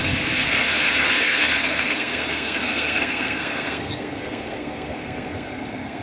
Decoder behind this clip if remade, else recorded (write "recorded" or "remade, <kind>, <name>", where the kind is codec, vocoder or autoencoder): remade, codec, SNAC